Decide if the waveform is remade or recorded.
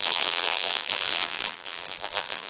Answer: remade